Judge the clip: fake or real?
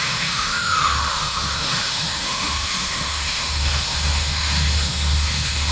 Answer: fake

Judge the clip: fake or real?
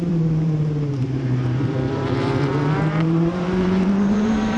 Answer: fake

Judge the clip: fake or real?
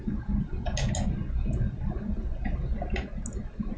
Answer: real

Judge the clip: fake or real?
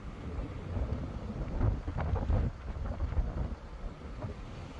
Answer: real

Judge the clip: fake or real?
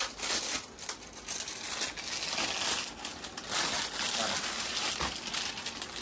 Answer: real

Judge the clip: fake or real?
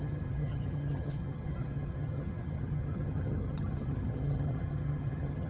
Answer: fake